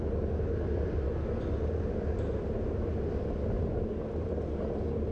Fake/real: real